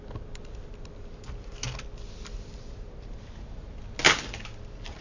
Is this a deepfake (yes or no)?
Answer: no